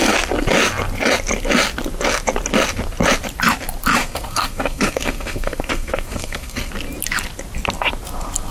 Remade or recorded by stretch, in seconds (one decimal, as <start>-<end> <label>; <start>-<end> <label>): 0.0-4.0 recorded; 4.0-6.7 remade; 6.7-8.5 recorded